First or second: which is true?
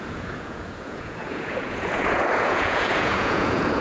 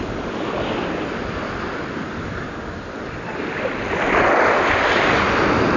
second